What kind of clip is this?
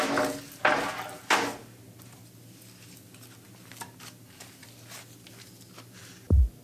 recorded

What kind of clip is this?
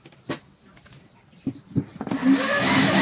recorded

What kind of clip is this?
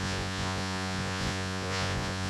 remade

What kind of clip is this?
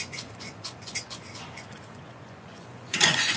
remade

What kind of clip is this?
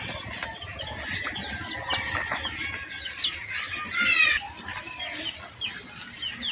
recorded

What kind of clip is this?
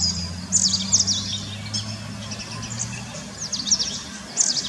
recorded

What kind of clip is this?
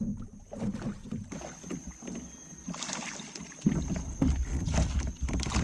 recorded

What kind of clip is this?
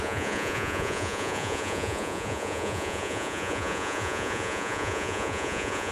remade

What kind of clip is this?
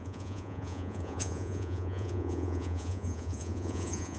remade